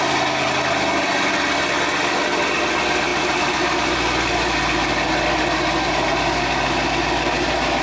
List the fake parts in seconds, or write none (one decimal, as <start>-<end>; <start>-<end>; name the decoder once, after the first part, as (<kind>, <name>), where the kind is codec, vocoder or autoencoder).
none